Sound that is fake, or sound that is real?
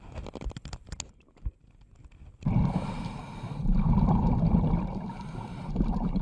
real